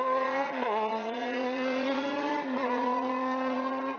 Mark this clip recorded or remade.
remade